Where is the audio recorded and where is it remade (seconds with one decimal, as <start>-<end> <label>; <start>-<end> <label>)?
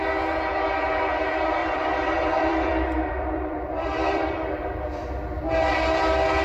0.0-1.6 recorded; 1.6-5.4 remade; 5.4-6.4 recorded